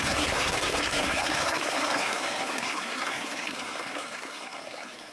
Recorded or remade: remade